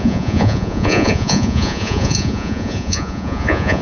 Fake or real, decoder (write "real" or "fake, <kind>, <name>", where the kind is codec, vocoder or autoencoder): fake, vocoder, Vocos